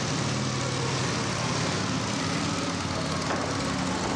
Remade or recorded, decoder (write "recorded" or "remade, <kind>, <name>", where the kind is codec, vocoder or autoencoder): recorded